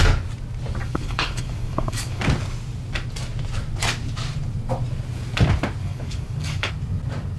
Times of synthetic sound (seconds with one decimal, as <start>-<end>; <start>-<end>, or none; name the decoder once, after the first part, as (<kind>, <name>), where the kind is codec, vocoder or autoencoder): 0.8-2.2 (codec, DAC); 5.8-6.7